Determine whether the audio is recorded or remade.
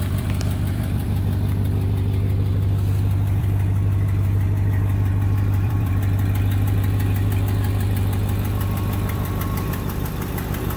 remade